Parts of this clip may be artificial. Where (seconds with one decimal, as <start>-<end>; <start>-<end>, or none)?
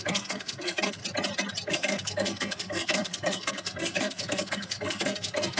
0.0-1.0; 1.7-5.6